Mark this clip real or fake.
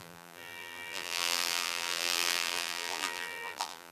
fake